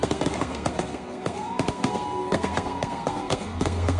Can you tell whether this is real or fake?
fake